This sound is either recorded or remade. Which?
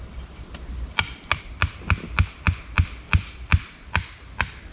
recorded